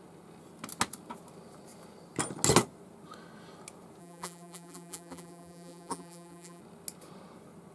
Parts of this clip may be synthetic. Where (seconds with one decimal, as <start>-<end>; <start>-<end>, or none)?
4.0-6.6

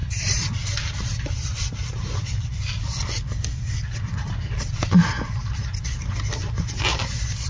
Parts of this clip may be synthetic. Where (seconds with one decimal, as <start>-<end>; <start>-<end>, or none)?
0.0-4.3

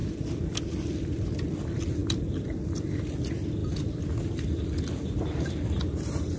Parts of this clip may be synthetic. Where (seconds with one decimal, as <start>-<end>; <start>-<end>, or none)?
none